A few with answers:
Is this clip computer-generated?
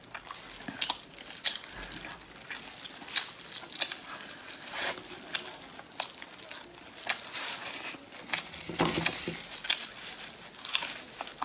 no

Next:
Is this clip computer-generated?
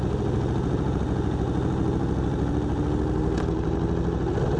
no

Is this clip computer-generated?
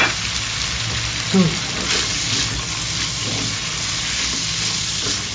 no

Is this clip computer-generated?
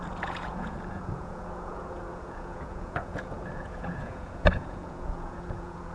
yes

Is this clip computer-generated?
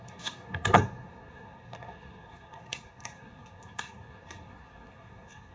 yes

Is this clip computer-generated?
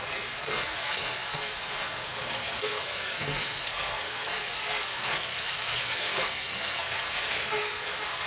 yes